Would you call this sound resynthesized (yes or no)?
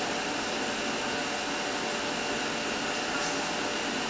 no